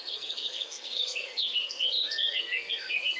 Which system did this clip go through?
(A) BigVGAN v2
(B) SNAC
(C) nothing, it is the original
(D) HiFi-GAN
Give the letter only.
B